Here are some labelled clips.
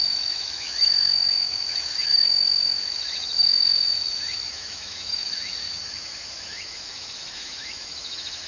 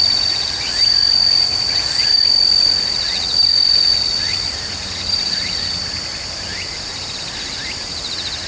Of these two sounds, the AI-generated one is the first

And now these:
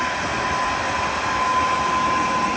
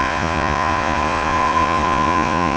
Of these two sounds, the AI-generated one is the second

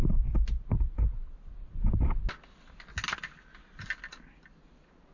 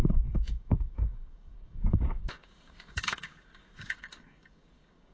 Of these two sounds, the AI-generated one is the second